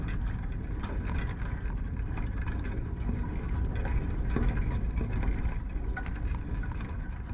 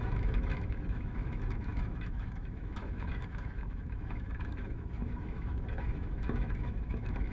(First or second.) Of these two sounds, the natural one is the first